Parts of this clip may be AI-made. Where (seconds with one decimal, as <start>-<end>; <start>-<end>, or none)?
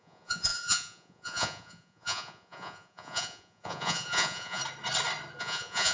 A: 0.0-4.6; 5.4-5.9